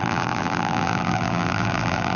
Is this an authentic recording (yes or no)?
no